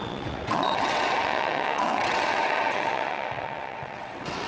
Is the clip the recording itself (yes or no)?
no